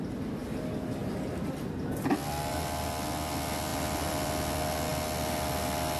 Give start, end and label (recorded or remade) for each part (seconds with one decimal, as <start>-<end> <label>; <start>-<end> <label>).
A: 0.0-3.7 recorded; 3.7-4.3 remade; 4.3-6.0 recorded